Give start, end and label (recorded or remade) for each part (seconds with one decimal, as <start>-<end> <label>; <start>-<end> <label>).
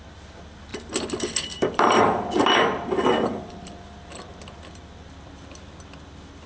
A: 0.0-0.7 recorded; 0.7-4.6 remade; 4.6-6.5 recorded